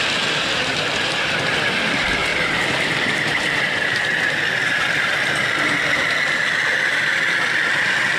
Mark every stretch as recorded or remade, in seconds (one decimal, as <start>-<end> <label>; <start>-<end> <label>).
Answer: 0.0-2.3 recorded; 2.3-4.0 remade; 4.0-8.2 recorded